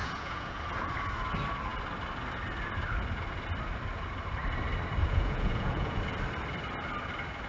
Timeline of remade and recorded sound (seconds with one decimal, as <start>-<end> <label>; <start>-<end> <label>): 0.0-0.6 remade; 0.6-5.0 recorded; 5.0-6.0 remade; 6.0-7.5 recorded

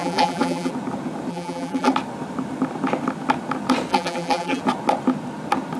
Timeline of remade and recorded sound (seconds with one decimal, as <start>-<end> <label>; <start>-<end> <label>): 0.0-0.7 remade; 0.7-1.3 recorded; 1.3-1.9 remade; 1.9-3.9 recorded; 3.9-4.6 remade; 4.6-5.8 recorded

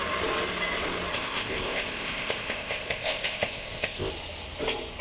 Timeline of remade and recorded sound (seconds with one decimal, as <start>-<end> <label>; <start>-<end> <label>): 0.0-1.1 recorded; 1.1-4.1 remade; 4.1-5.0 recorded